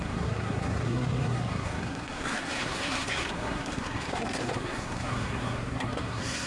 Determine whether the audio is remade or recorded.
remade